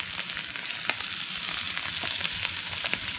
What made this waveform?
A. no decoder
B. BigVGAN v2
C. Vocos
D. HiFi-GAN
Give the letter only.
A